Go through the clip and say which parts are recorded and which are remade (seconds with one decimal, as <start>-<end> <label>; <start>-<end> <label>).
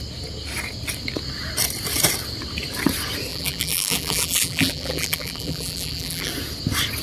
0.0-3.3 recorded; 3.3-6.3 remade; 6.3-7.0 recorded